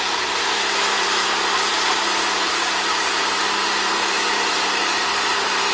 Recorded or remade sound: remade